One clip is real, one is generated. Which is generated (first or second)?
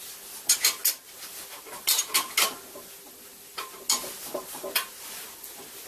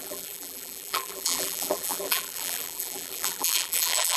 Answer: second